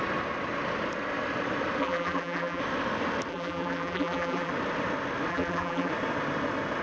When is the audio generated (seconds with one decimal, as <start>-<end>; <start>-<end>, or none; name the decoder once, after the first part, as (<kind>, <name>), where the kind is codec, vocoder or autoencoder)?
1.8-2.6 (vocoder, BigVGAN v2); 3.3-4.5; 5.3-5.9